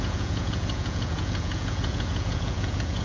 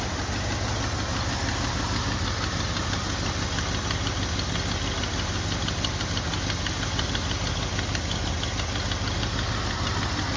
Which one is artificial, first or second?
first